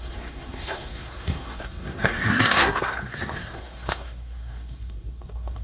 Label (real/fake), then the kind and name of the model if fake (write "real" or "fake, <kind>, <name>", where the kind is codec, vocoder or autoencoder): fake, codec, SNAC